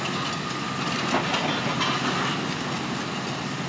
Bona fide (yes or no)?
yes